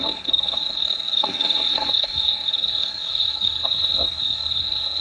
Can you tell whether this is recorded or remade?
remade